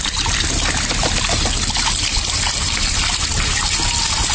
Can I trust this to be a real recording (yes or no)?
yes